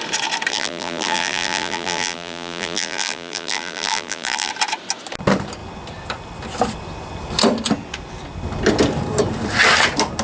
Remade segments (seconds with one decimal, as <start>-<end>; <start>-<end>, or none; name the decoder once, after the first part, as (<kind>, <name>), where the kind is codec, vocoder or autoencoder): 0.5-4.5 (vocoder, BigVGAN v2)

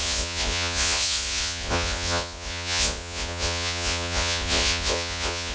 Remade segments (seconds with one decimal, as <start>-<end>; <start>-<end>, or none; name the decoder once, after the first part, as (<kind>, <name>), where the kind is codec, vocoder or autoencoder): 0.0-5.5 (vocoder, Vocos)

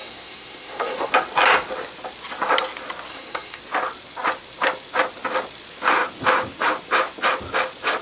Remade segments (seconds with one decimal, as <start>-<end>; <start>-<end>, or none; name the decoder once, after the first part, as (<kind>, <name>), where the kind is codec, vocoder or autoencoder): 0.0-1.1 (codec, SNAC); 3.1-3.6

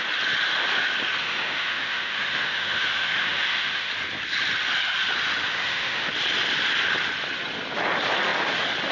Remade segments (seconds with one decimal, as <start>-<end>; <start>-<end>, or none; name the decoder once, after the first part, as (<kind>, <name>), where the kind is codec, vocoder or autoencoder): 1.2-3.9 (autoencoder, DAC-VAE); 5.5-6.1

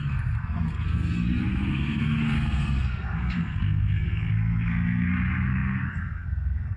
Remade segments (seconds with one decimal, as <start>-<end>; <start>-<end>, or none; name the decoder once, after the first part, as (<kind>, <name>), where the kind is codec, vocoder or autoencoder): 0.0-6.8 (codec, SNAC)

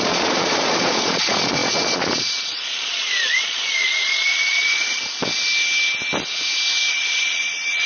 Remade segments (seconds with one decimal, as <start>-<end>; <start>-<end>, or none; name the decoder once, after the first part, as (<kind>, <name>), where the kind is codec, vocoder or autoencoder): 0.0-5.0 (vocoder, Vocos); 6.9-7.9

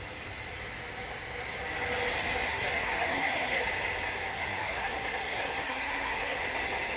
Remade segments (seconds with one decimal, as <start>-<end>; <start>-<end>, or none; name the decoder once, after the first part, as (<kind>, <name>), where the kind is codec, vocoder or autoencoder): 2.5-3.6 (codec, SNAC); 4.3-6.4

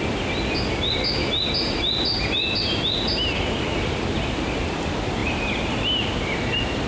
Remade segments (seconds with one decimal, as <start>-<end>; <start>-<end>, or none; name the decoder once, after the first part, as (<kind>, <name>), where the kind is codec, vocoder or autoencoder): none